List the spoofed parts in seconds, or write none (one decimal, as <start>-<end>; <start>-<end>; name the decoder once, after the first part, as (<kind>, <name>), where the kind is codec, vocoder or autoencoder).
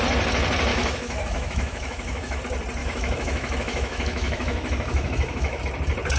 0.7-2.4 (autoencoder, DAC-VAE); 2.8-5.6